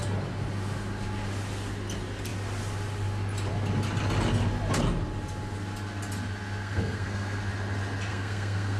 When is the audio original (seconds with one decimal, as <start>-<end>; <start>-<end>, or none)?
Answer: 0.0-6.6; 7.4-8.1